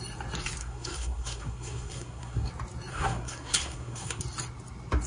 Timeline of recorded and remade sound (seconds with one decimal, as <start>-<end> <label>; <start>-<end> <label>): 0.0-0.6 recorded; 0.6-2.5 remade; 2.5-2.9 recorded; 2.9-4.2 remade; 4.2-5.1 recorded